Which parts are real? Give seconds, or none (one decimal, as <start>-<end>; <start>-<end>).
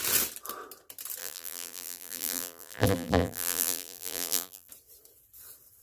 0.0-1.2; 4.7-5.8